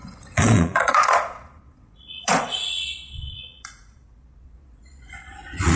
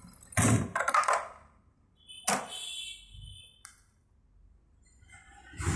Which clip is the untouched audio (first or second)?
second